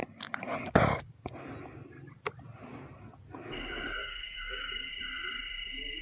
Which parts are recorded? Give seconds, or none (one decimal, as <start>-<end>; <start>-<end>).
0.0-4.0; 4.9-6.0